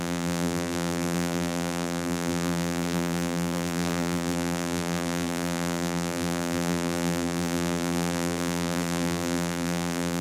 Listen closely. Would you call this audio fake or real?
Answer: fake